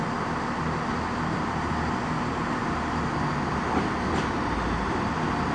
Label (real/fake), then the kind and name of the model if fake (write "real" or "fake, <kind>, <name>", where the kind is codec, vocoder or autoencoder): real